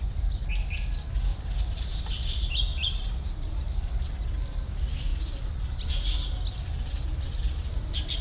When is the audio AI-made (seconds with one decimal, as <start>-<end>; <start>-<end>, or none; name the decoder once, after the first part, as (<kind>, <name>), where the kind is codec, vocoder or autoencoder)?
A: 1.3-4.3 (vocoder, BigVGAN v2)